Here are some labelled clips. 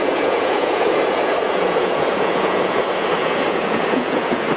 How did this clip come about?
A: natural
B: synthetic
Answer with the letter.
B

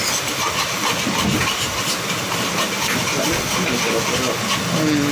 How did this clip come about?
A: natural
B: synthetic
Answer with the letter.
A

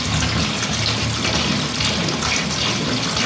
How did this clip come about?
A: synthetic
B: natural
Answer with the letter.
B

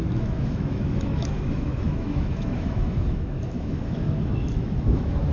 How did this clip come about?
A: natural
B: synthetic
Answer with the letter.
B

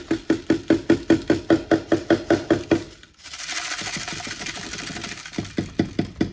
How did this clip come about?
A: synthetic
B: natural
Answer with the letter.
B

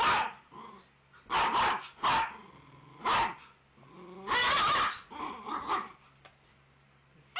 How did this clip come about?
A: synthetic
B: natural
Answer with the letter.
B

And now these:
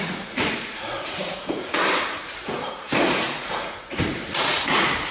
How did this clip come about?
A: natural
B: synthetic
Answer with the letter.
B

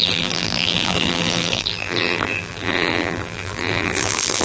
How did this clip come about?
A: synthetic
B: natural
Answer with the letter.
A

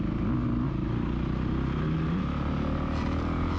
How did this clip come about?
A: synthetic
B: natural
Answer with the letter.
B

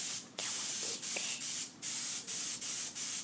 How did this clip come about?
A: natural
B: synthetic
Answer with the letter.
A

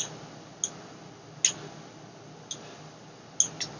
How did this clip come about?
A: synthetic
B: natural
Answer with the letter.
B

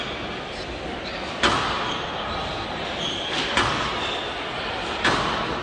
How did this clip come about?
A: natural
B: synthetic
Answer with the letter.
A